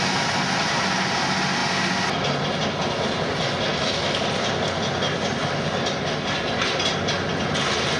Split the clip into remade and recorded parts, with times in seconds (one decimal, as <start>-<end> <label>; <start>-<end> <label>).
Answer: 0.0-3.7 recorded; 3.7-4.2 remade; 4.2-8.0 recorded